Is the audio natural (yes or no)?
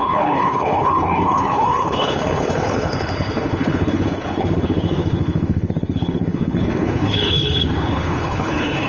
no